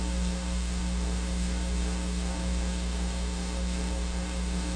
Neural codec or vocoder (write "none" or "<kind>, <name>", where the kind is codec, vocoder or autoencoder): codec, DAC